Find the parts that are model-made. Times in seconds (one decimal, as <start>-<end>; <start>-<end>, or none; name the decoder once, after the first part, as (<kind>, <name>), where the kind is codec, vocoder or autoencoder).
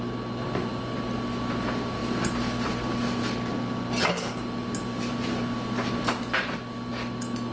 none